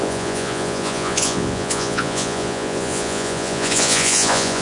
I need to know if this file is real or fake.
fake